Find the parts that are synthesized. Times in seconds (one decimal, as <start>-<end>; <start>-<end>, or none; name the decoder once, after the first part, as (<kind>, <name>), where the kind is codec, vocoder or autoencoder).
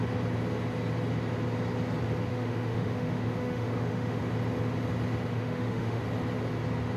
2.3-4.2 (autoencoder, DAC-VAE); 5.3-6.0